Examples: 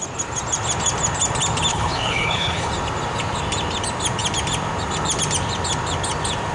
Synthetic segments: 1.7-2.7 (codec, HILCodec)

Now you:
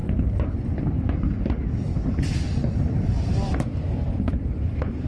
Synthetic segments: 3.5-5.1 (vocoder, BigVGAN v2)

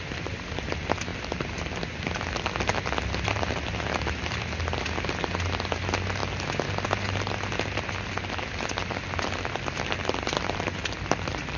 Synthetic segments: none